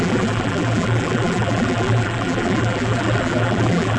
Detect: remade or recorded remade